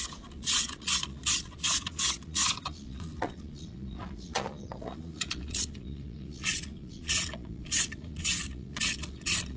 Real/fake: fake